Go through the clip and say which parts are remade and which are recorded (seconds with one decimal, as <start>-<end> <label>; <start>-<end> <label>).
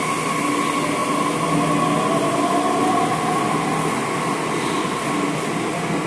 0.0-6.1 recorded